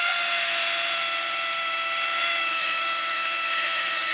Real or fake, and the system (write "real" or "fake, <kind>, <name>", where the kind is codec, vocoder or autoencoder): fake, autoencoder, DAC-VAE